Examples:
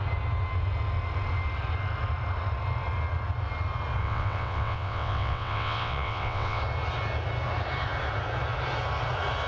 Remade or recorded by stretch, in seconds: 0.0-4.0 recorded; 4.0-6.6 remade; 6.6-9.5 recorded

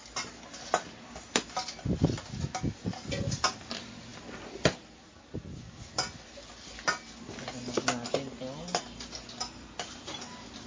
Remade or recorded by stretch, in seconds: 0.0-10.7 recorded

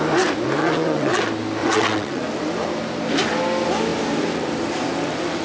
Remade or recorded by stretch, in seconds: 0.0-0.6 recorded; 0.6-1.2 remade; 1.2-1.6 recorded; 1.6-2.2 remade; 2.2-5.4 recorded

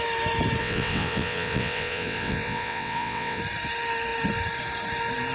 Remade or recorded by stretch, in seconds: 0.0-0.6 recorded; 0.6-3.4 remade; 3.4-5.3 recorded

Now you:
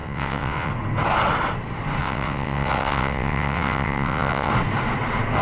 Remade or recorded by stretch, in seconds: 0.0-0.7 remade; 0.7-2.0 recorded; 2.0-4.5 remade; 4.5-5.4 recorded

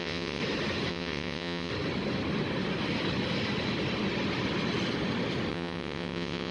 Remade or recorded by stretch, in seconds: 0.0-0.4 remade; 0.4-0.9 recorded; 0.9-1.7 remade; 1.7-5.5 recorded; 5.5-6.5 remade